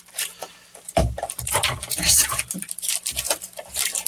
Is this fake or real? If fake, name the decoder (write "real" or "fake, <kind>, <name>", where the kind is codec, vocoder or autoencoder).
fake, vocoder, BigVGAN v2